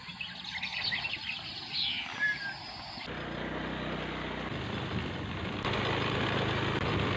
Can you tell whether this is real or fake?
real